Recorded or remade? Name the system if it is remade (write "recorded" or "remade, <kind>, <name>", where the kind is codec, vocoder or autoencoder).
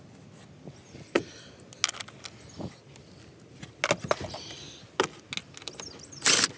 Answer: recorded